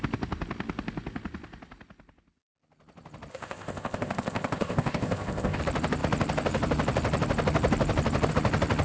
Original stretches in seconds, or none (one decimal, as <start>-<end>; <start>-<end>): 0.0-3.3; 5.6-8.8